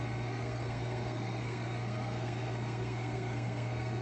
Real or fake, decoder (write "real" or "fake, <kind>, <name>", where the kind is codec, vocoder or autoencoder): fake, codec, SNAC